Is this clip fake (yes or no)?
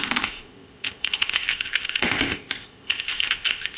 yes